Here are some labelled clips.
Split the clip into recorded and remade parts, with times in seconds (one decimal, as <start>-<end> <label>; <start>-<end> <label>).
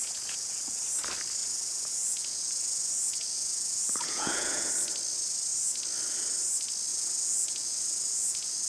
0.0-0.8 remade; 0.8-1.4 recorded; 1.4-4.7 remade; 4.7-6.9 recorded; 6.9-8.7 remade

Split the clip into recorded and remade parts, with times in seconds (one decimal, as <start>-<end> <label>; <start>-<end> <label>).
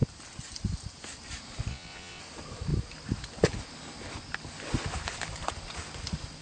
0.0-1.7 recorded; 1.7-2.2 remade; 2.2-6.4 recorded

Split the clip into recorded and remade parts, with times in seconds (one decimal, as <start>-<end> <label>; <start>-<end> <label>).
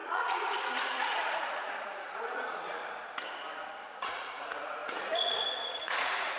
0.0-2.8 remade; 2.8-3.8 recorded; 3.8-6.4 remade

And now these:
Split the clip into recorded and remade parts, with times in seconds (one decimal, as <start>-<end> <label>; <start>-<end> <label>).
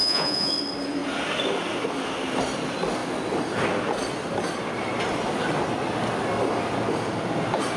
0.0-0.5 remade; 0.5-7.8 recorded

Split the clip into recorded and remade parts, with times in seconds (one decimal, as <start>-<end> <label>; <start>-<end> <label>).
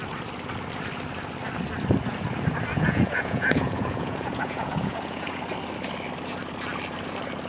0.0-2.7 recorded; 2.7-5.4 remade; 5.4-7.5 recorded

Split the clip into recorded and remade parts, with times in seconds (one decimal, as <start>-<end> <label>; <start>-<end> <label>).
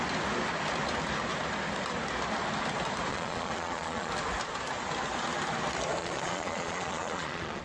0.0-3.1 recorded; 3.1-4.1 remade; 4.1-6.0 recorded; 6.0-7.6 remade